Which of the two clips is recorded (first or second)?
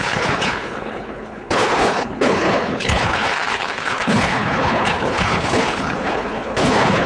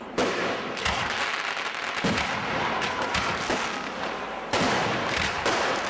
second